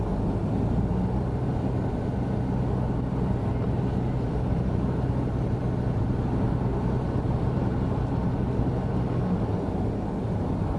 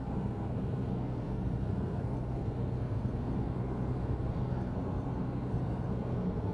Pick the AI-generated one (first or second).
second